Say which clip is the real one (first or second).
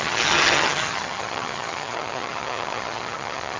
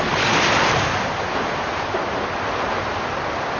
second